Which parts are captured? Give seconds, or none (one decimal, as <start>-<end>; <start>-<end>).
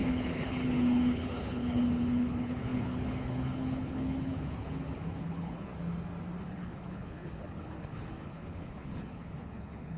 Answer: 5.7-6.4